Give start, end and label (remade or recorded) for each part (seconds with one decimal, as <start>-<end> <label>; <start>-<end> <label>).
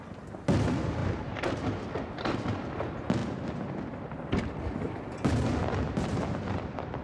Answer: 0.0-1.0 recorded; 1.0-1.9 remade; 1.9-7.0 recorded